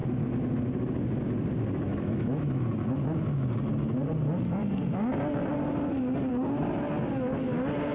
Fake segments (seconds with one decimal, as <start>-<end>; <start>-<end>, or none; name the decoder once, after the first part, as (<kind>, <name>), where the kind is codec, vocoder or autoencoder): 1.9-2.6 (autoencoder, DAC-VAE)